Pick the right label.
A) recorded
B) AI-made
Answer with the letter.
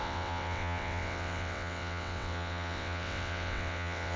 B